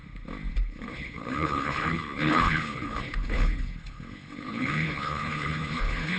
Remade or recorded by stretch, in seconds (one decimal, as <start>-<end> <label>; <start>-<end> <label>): 0.0-0.5 recorded; 0.5-6.2 remade